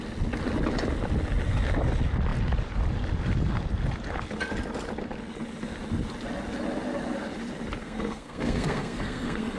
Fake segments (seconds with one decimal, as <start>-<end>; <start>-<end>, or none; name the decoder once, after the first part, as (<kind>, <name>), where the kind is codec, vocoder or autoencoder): 7.8-9.6 (codec, SNAC)